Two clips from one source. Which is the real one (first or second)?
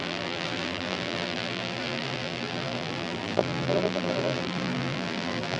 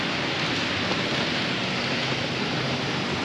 second